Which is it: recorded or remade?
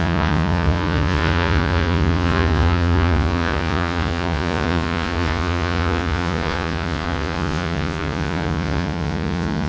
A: remade